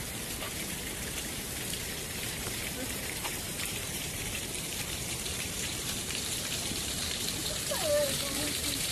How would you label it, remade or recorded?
remade